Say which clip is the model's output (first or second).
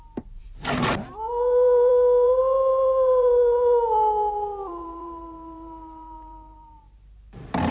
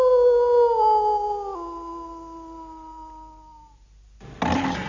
first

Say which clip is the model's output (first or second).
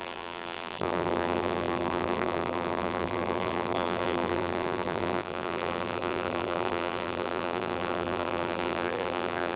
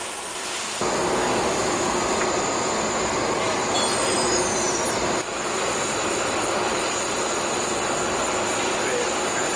first